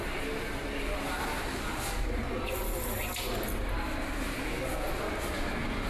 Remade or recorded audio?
recorded